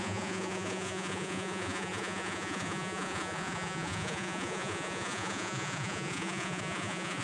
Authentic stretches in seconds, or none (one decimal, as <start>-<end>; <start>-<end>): none